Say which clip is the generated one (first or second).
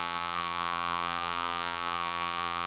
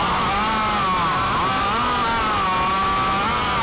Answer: first